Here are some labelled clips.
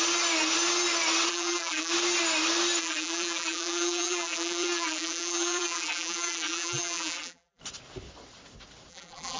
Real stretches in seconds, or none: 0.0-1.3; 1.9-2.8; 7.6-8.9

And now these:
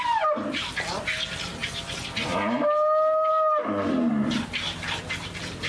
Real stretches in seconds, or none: 0.0-5.7

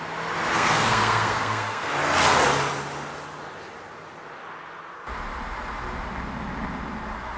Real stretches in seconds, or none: 0.0-0.5; 1.9-7.4

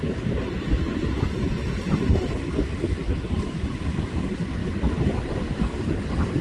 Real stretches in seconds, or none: 0.0-6.4

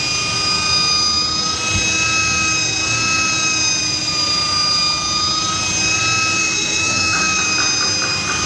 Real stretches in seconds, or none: 0.0-6.4; 7.4-8.5

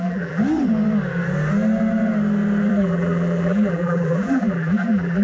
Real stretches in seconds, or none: 0.4-2.7

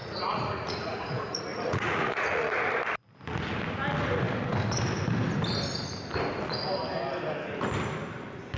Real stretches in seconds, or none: 2.5-8.6